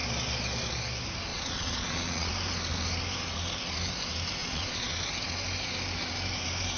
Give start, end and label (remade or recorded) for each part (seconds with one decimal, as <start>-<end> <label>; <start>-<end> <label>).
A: 0.0-1.3 recorded; 1.3-2.3 remade; 2.3-4.4 recorded; 4.4-4.9 remade; 4.9-6.8 recorded

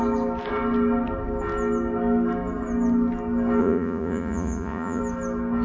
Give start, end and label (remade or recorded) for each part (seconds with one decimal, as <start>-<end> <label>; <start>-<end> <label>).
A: 0.0-3.6 recorded; 3.6-5.0 remade; 5.0-5.6 recorded

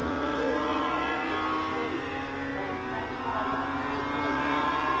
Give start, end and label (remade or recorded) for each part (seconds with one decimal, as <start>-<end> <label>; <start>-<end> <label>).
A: 0.0-1.3 remade; 1.3-4.3 recorded; 4.3-5.0 remade

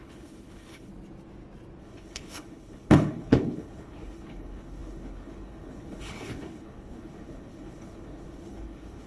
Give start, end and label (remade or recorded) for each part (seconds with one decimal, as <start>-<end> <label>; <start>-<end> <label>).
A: 0.0-0.9 remade; 0.9-1.8 recorded; 1.8-9.1 remade

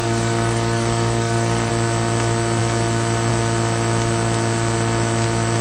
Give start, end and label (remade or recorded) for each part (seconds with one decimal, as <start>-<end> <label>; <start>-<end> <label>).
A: 0.0-1.7 remade; 1.7-5.6 recorded

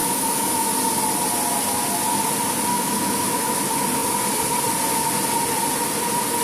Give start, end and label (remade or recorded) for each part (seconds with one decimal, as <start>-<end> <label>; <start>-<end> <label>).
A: 0.0-0.7 remade; 0.7-2.7 recorded; 2.7-3.6 remade; 3.6-6.4 recorded

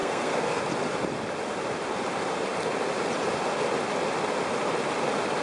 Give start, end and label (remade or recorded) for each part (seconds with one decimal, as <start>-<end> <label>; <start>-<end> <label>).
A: 0.0-0.6 remade; 0.6-5.4 recorded

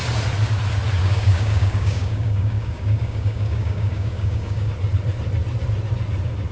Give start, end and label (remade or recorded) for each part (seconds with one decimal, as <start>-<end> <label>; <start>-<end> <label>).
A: 0.0-1.0 recorded; 1.0-4.7 remade; 4.7-6.5 recorded